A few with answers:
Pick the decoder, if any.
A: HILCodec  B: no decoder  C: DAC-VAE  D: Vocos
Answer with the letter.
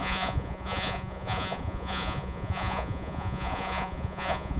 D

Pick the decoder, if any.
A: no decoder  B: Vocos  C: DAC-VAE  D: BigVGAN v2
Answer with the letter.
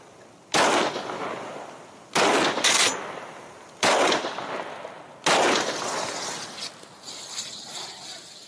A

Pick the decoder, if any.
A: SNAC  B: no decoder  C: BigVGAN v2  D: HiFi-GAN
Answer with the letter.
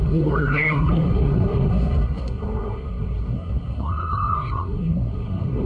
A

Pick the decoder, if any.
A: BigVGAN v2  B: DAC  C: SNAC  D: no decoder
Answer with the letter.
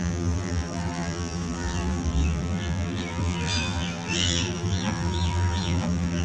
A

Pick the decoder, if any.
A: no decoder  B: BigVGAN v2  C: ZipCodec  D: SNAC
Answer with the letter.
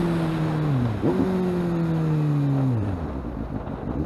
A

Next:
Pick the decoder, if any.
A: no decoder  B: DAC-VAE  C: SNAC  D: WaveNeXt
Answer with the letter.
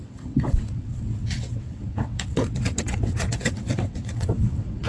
D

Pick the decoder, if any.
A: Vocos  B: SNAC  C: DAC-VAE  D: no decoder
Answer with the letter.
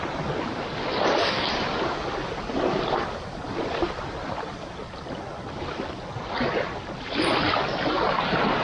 D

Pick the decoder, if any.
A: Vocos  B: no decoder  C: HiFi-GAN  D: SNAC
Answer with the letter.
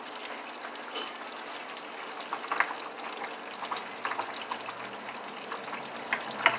B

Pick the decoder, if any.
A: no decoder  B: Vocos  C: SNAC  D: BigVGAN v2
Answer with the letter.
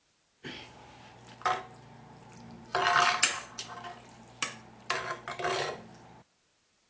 A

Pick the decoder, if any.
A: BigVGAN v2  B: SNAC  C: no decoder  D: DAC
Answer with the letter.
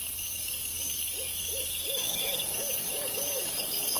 D